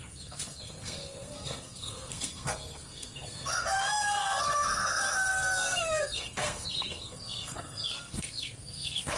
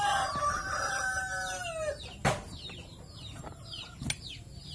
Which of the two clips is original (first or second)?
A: second